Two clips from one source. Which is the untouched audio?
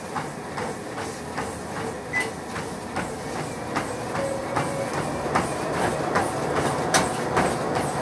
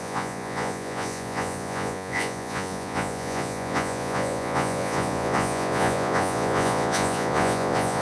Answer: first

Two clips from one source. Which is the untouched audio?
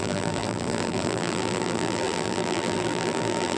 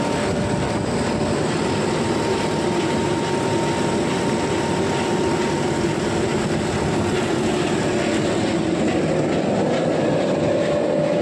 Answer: second